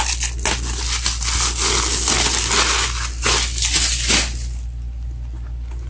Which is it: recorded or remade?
recorded